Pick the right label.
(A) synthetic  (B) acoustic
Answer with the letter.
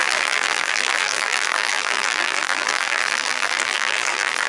A